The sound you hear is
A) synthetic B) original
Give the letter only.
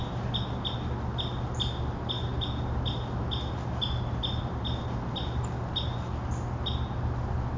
B